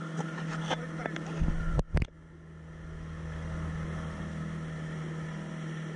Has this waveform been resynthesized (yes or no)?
no